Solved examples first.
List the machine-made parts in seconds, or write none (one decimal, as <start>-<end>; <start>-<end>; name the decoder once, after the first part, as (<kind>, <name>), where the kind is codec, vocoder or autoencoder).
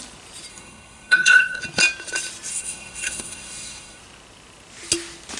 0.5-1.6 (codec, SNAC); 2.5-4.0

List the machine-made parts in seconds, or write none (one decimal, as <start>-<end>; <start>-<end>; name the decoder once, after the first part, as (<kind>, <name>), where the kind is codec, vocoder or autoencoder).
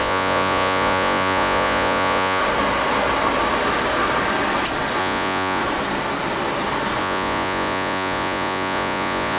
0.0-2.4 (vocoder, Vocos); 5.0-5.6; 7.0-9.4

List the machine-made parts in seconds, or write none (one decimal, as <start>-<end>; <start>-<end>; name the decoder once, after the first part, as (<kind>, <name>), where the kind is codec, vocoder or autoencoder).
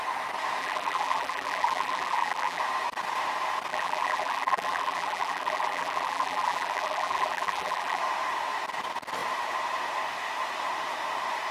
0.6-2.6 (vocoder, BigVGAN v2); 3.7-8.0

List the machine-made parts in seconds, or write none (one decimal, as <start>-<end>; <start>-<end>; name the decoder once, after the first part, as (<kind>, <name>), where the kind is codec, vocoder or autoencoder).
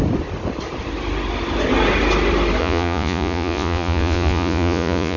2.6-5.2 (vocoder, Vocos)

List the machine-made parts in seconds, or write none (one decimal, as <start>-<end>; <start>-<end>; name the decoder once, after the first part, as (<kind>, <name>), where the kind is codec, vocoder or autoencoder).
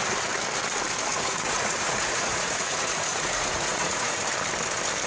1.1-4.2 (vocoder, Vocos)